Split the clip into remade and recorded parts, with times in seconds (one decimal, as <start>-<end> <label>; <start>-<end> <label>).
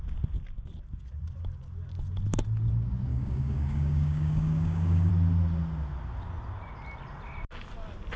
0.0-3.1 recorded; 3.1-5.1 remade; 5.1-8.2 recorded